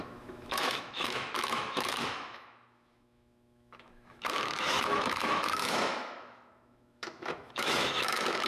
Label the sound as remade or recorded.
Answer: remade